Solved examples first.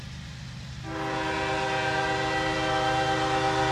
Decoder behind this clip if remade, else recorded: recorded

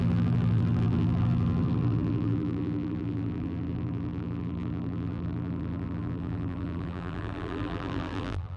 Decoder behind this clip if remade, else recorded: remade, vocoder, BigVGAN v2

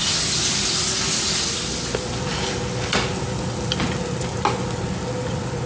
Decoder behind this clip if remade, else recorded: recorded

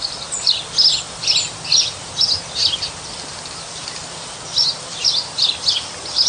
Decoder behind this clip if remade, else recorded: recorded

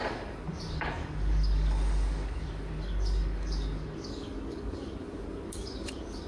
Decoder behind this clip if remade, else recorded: remade, codec, DAC